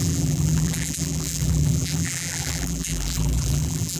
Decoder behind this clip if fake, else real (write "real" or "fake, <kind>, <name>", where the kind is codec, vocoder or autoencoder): fake, vocoder, BigVGAN v2